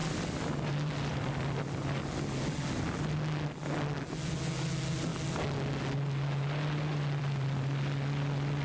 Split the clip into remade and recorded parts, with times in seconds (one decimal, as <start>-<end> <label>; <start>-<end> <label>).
0.0-2.0 remade; 2.0-8.6 recorded